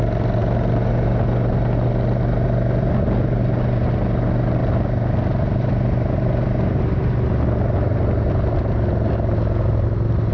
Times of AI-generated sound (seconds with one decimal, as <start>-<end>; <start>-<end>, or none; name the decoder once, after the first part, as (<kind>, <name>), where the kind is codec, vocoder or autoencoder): none